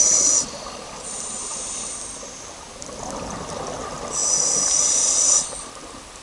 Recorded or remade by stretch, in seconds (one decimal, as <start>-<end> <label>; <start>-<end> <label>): 0.0-6.2 recorded